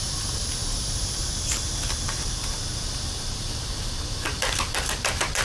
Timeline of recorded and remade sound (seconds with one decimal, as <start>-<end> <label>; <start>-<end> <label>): 0.0-5.4 remade